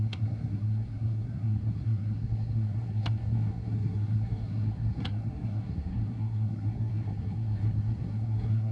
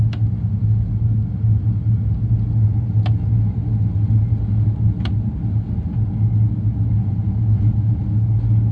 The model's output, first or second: first